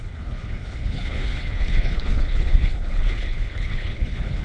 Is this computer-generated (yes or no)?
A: yes